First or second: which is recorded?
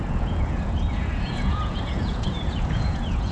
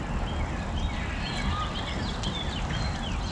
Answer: second